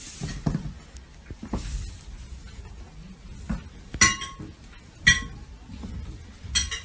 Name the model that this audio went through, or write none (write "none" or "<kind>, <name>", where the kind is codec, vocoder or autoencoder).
none